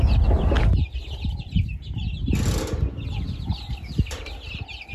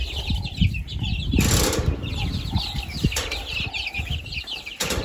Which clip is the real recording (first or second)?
first